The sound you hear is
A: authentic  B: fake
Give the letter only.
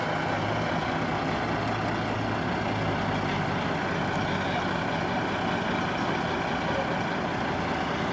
A